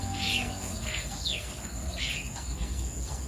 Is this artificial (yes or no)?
yes